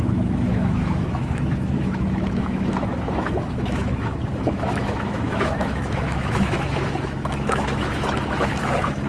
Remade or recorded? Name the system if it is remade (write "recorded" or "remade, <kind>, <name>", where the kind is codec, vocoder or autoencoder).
remade, autoencoder, DAC-VAE